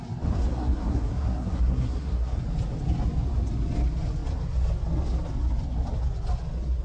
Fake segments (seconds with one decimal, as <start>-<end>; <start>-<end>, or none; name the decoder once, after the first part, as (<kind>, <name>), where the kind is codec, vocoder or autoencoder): 0.5-2.4 (codec, SNAC)